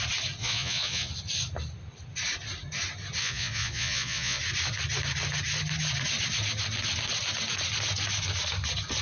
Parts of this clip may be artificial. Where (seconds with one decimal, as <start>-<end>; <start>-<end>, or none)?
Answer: 0.4-1.1; 3.2-4.4

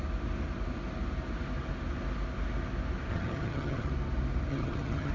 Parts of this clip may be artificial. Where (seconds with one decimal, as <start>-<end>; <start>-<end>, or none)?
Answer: 3.1-3.9; 4.5-5.1

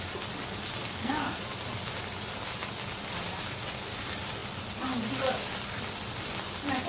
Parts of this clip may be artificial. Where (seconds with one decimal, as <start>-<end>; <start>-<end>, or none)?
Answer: 0.8-1.4

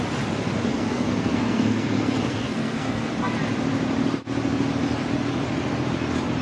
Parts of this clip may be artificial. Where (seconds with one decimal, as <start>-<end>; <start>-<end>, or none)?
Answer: 0.7-3.1

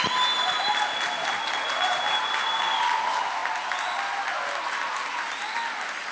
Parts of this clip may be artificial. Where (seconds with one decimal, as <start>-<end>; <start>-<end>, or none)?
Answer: none

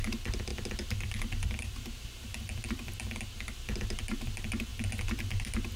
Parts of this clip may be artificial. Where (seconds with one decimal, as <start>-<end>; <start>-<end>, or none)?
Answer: none

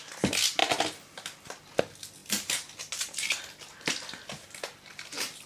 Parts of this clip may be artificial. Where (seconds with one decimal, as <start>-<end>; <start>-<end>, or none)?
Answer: none

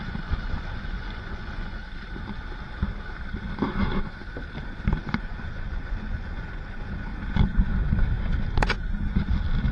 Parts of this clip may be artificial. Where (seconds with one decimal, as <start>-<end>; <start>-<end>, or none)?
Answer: 0.0-1.8; 5.0-7.1